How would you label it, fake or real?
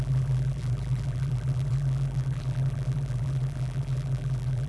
fake